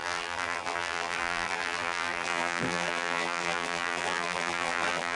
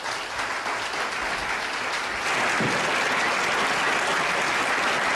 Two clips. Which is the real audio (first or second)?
second